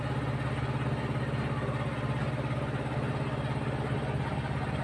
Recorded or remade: recorded